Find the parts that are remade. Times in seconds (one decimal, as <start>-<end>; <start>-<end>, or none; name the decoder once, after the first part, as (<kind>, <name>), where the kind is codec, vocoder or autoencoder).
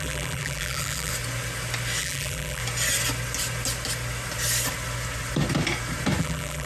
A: 0.0-1.1 (vocoder, BigVGAN v2); 2.0-2.6; 6.2-6.7